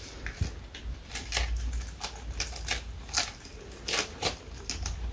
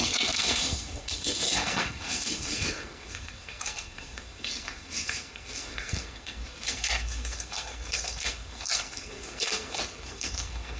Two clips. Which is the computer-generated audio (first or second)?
second